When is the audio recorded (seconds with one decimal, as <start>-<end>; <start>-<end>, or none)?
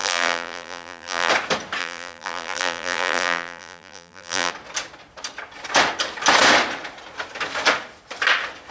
1.3-1.8; 4.5-8.7